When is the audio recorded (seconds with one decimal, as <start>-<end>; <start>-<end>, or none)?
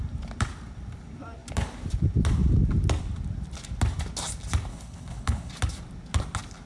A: 0.0-4.7; 5.5-6.7